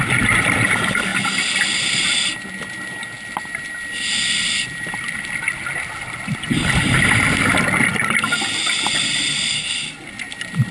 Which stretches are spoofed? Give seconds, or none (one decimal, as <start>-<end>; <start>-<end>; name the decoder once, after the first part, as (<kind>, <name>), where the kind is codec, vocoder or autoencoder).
none

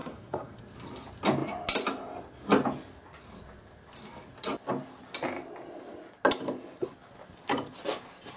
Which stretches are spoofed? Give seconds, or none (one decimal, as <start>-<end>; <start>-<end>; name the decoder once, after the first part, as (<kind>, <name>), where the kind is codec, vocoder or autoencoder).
0.0-0.6 (codec, SNAC)

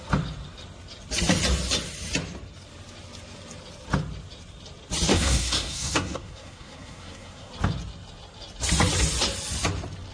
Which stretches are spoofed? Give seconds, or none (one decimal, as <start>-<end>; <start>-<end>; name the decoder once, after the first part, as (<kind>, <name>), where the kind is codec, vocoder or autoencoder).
5.1-7.5 (codec, SNAC)

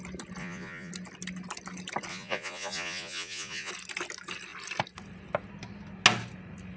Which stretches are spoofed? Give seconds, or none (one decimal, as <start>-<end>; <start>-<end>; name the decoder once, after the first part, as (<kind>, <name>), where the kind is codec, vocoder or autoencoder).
0.4-0.9 (vocoder, Vocos); 2.1-3.7

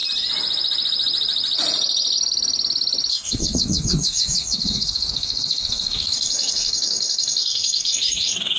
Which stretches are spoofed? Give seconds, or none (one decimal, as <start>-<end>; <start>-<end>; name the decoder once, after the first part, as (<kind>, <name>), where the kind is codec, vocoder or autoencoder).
3.1-8.6 (codec, DAC)

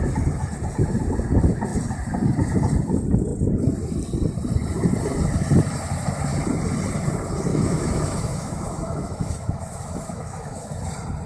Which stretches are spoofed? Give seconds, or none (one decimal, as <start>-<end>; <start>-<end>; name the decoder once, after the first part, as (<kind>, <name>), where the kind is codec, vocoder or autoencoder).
7.5-10.9 (autoencoder, DAC-VAE)